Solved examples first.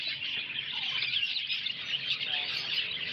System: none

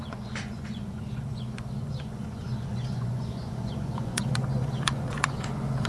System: vocoder, Vocos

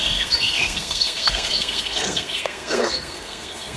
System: codec, SNAC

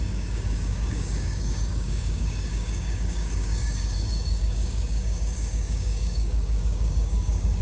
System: codec, DAC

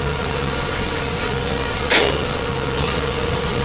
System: vocoder, WaveNeXt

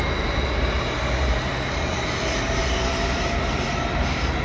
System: vocoder, BigVGAN v2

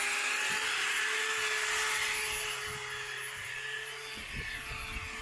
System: none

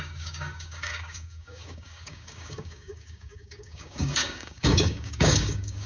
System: codec, DAC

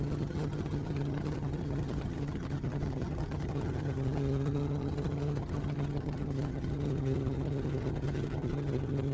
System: vocoder, HiFi-GAN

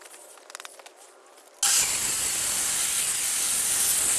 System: none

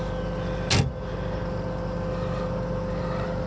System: none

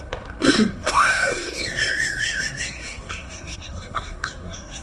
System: codec, SNAC